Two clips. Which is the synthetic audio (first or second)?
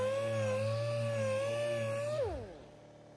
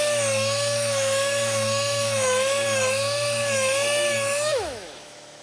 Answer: second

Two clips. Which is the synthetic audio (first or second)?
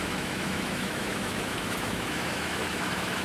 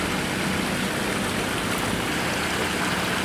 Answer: first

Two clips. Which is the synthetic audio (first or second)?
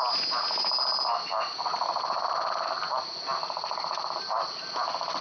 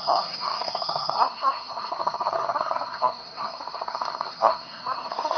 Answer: second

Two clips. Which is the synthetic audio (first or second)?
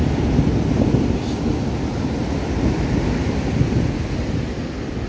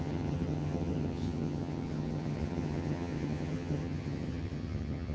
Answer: second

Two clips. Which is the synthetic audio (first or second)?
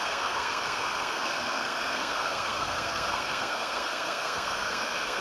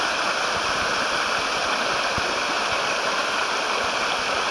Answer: first